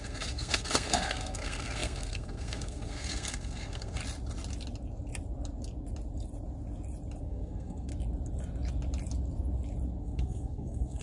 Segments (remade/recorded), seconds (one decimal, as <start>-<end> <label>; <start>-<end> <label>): 0.0-4.0 remade; 4.0-7.2 recorded; 7.2-7.9 remade; 7.9-10.0 recorded; 10.0-11.0 remade